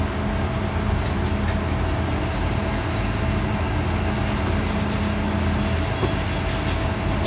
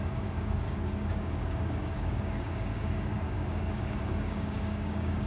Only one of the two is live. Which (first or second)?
first